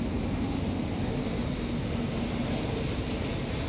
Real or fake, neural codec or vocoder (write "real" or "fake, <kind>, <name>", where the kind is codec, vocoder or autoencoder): real